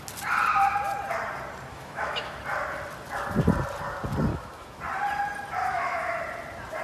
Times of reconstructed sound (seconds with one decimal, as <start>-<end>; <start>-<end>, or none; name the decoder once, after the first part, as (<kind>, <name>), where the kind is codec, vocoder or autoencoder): 1.7-2.4 (autoencoder, DAC-VAE); 4.3-4.8; 5.6-6.2